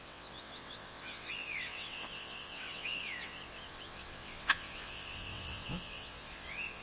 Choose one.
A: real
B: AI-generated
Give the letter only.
B